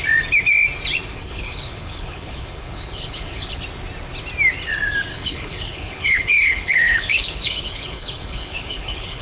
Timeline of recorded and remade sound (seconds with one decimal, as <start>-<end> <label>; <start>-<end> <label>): 0.0-1.1 recorded; 1.1-3.6 remade; 3.6-5.1 recorded; 5.1-9.2 remade